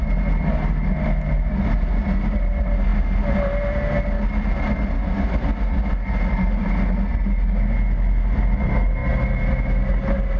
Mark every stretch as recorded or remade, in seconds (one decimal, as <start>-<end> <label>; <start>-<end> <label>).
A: 0.0-10.4 recorded